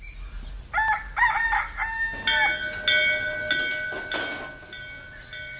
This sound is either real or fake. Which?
real